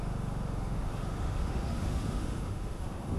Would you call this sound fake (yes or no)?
yes